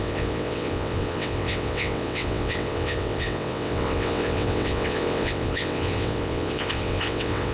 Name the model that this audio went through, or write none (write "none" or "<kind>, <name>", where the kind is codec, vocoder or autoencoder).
vocoder, WaveNeXt